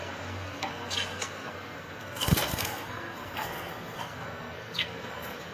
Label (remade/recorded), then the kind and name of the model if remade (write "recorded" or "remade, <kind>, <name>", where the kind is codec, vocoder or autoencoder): remade, codec, SNAC